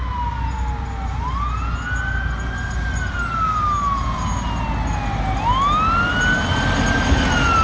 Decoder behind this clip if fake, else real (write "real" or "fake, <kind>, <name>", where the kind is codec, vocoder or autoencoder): real